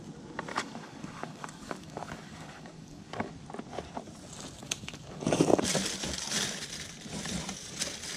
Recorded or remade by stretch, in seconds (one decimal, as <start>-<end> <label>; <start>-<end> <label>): 0.0-0.5 recorded; 0.5-3.3 remade; 3.3-4.6 recorded; 4.6-5.6 remade; 5.6-8.2 recorded